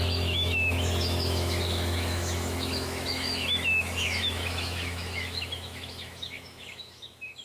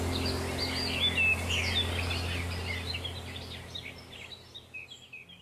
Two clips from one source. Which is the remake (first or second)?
first